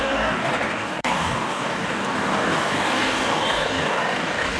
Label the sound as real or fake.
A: fake